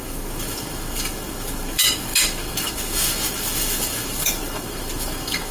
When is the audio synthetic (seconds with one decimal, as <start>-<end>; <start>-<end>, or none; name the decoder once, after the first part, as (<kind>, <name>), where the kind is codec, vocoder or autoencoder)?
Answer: 0.0-5.5 (autoencoder, DAC-VAE)

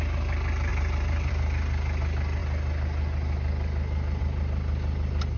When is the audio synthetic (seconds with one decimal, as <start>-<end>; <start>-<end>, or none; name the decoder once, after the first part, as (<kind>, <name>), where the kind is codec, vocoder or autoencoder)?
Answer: 0.7-1.3 (vocoder, BigVGAN v2)

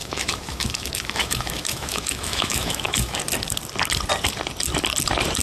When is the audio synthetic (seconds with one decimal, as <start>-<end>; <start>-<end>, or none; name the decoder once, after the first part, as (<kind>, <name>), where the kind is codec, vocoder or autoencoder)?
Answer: 0.0-3.2 (autoencoder, DAC-VAE)

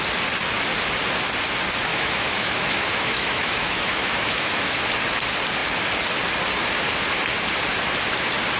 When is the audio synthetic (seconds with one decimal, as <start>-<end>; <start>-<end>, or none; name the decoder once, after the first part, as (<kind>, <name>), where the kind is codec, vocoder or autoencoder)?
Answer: 1.9-4.9 (autoencoder, DAC-VAE)